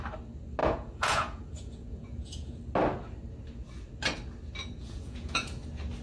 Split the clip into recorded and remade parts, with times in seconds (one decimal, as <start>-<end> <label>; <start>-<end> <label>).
0.0-0.6 recorded; 0.6-2.6 remade; 2.6-4.6 recorded; 4.6-5.6 remade; 5.6-6.0 recorded